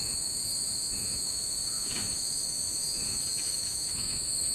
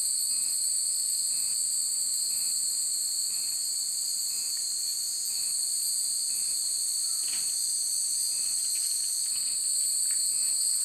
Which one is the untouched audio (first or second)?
second